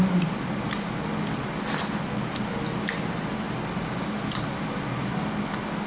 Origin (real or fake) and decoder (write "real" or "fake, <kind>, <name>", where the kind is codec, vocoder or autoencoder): real